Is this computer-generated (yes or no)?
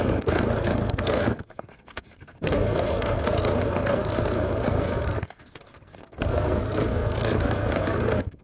yes